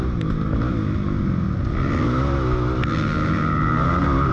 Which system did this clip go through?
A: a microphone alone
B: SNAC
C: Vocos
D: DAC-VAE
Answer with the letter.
A